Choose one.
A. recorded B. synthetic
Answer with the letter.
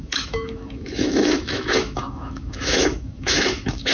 B